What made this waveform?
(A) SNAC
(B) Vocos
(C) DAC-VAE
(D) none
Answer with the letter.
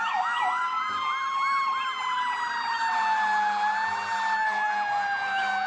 D